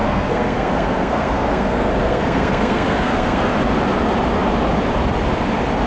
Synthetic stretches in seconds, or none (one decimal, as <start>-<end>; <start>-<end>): 0.0-3.5